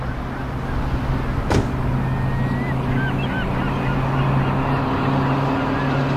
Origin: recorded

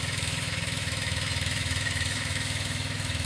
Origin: remade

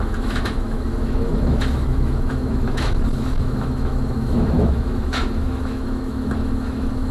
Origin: remade